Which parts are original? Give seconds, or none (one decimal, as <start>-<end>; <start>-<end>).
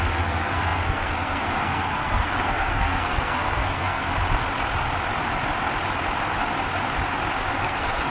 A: 4.1-7.6